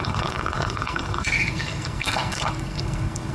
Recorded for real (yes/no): no